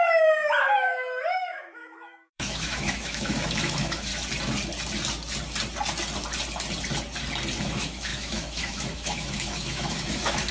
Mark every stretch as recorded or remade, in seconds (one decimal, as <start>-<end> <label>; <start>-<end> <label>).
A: 0.0-4.1 remade; 4.1-7.6 recorded; 7.6-10.5 remade